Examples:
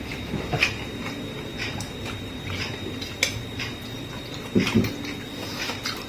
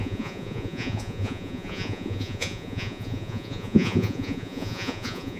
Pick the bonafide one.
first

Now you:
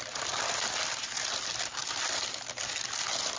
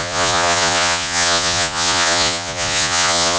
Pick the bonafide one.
first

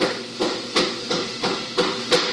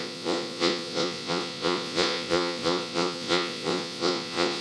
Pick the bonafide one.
first